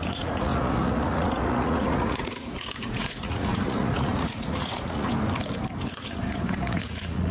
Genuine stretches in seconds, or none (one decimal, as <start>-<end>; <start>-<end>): 5.1-5.9